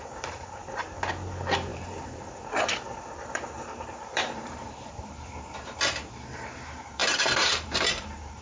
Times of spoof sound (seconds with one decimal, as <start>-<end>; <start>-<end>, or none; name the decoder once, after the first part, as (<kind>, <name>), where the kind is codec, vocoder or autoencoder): 0.0-0.6 (vocoder, BigVGAN v2); 1.1-8.4